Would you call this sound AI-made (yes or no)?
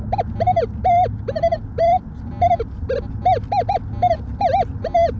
no